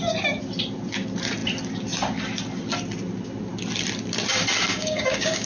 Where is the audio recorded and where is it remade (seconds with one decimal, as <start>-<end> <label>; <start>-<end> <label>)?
0.0-4.7 recorded; 4.7-5.5 remade